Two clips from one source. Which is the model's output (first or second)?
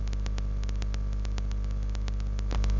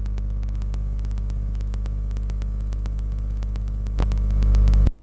second